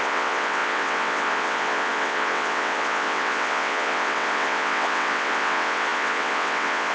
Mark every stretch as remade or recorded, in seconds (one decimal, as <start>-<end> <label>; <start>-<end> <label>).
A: 0.0-6.9 remade